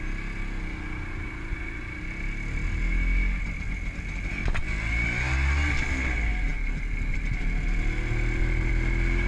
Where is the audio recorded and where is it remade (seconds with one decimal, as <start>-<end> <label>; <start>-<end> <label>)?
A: 0.0-9.3 recorded